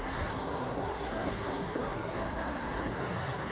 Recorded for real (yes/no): no